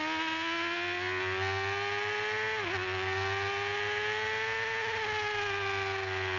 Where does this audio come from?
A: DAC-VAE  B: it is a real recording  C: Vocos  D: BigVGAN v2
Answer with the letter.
B